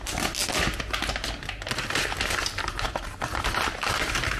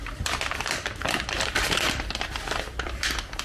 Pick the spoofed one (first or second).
second